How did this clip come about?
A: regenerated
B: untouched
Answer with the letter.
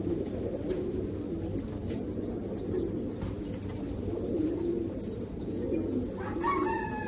B